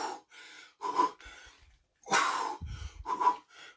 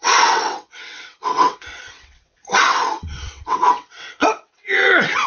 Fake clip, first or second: second